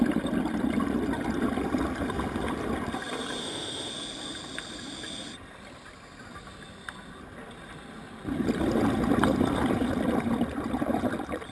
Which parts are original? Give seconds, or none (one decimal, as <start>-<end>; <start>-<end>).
0.0-3.4; 3.9-11.5